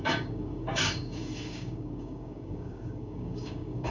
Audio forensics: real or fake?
fake